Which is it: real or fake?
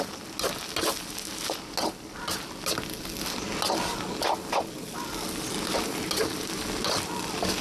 real